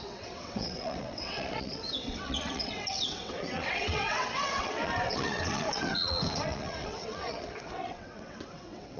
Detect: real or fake fake